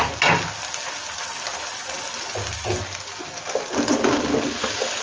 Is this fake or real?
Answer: real